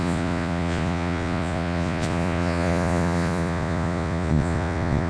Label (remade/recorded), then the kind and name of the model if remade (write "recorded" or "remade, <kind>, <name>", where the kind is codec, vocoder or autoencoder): remade, vocoder, Vocos